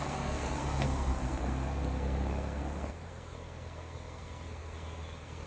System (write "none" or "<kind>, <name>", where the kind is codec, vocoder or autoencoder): codec, SNAC